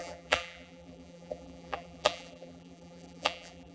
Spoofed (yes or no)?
yes